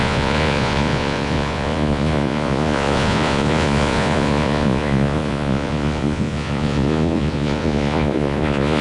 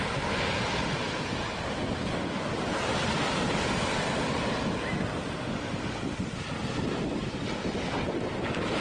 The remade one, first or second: first